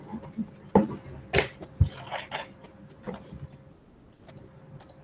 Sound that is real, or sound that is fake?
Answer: real